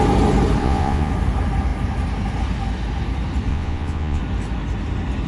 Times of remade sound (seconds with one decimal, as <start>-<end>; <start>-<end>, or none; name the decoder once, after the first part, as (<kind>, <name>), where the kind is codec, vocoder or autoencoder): 0.6-1.1 (vocoder, Vocos); 3.5-4.2

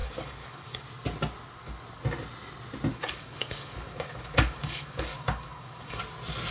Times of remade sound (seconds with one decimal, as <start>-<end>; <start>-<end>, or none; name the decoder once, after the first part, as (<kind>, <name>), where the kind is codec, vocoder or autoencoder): 0.0-0.8 (codec, DAC); 2.9-6.0

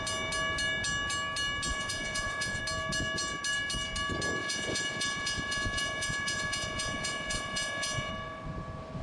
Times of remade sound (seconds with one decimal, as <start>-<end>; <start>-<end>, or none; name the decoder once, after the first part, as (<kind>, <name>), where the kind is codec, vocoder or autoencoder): 1.7-2.6 (vocoder, Vocos); 4.4-8.1

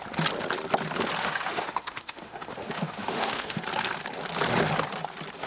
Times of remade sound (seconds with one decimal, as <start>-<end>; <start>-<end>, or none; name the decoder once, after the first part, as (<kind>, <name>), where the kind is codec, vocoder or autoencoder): 1.2-3.6 (autoencoder, DAC-VAE)

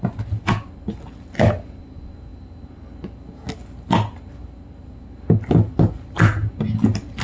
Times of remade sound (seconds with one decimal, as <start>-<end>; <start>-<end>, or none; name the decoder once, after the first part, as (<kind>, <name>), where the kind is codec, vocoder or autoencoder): none